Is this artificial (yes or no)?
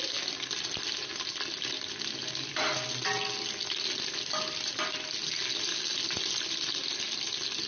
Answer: no